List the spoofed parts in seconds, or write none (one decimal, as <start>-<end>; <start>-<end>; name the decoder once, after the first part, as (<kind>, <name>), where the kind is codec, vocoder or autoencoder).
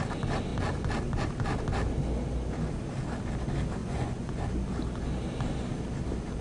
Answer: 3.8-4.4 (vocoder, Vocos)